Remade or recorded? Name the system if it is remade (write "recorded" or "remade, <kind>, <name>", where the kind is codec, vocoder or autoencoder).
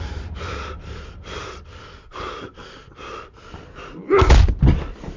recorded